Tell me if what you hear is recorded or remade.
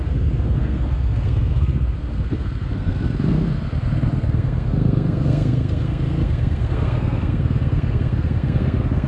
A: remade